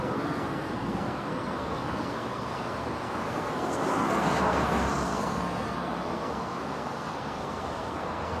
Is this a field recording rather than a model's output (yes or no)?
no